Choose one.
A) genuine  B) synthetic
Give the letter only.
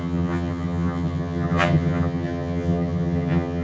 B